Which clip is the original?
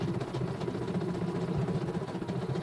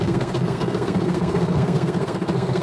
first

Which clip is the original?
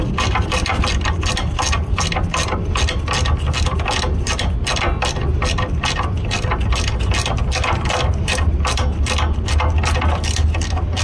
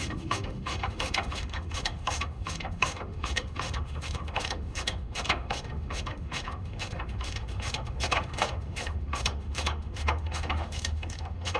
first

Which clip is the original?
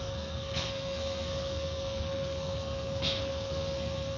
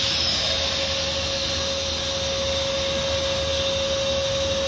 second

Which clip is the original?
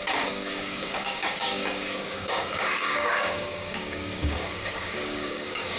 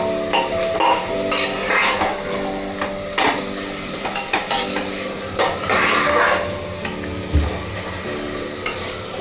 second